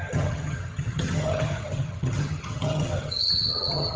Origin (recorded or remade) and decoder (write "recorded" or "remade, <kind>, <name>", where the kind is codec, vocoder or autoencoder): remade, vocoder, HiFi-GAN